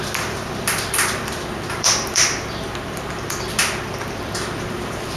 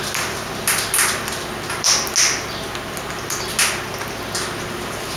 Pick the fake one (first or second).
first